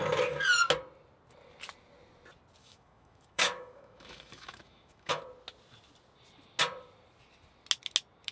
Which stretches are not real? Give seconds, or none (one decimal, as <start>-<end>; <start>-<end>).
2.6-5.2